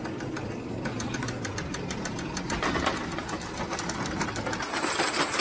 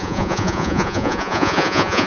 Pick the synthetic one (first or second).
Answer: second